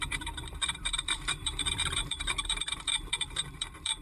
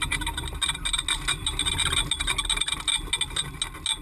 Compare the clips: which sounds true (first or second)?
second